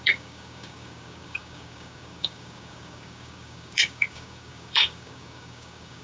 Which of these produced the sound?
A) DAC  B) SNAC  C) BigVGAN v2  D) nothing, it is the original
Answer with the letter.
A